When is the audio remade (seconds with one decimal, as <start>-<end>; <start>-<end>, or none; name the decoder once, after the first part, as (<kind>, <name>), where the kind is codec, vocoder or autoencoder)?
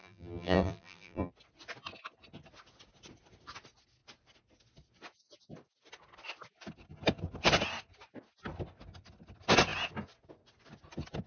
0.0-1.3 (vocoder, BigVGAN v2)